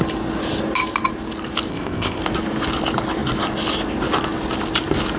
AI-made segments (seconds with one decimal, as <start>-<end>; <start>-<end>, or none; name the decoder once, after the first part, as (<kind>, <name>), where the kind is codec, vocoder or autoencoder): 1.7-2.2 (codec, ZipCodec)

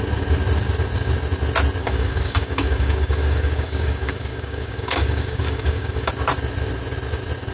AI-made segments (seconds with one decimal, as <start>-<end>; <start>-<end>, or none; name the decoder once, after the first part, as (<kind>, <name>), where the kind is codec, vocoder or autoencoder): 1.8-6.1 (codec, DAC)

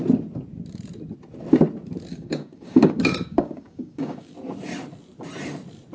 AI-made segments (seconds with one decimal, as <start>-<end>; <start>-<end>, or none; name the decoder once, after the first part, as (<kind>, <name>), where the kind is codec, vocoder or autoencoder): 2.1-4.3 (codec, DAC)

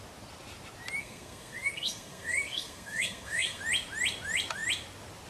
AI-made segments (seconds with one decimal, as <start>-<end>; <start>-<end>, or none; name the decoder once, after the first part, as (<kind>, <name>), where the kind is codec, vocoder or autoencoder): 1.0-3.6 (codec, SNAC)

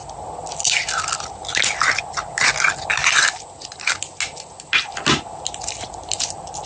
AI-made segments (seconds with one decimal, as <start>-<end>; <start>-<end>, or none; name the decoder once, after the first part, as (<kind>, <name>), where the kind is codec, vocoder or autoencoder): none

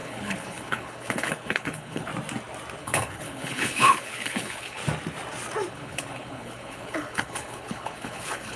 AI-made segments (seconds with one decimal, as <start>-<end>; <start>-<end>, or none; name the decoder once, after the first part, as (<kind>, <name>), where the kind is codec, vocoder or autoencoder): 0.0-2.1 (codec, HILCodec); 2.8-4.8; 5.7-8.6

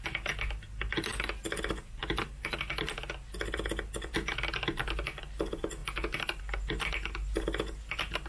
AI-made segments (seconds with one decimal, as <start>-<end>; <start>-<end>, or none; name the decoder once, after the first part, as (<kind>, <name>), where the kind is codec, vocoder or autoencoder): 5.8-6.4 (vocoder, BigVGAN v2)

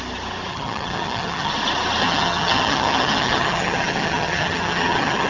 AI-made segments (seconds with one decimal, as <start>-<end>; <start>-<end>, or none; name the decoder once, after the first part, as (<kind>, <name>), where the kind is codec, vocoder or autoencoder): 0.5-1.5 (vocoder, HiFi-GAN); 2.0-5.3